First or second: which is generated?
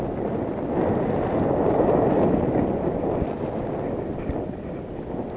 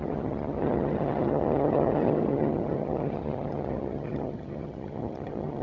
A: second